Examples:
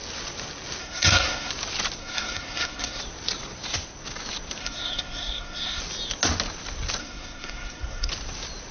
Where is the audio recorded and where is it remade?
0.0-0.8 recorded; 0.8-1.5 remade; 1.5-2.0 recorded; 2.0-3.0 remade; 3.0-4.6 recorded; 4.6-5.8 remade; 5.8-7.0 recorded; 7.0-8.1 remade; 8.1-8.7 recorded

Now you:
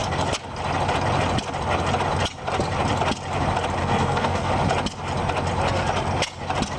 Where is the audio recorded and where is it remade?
0.0-3.8 recorded; 3.8-4.5 remade; 4.5-6.8 recorded

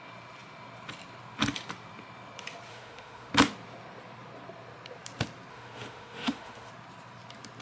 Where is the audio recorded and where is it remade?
0.0-2.7 recorded; 2.7-3.3 remade; 3.3-5.5 recorded; 5.5-6.7 remade; 6.7-7.6 recorded